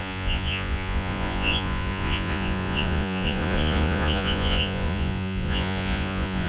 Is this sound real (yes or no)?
no